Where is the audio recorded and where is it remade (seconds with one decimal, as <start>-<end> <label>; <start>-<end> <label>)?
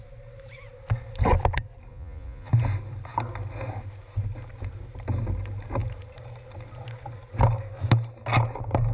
0.0-1.9 recorded; 1.9-2.5 remade; 2.5-8.9 recorded